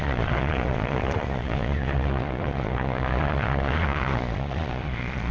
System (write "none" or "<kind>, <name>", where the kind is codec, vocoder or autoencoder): vocoder, Vocos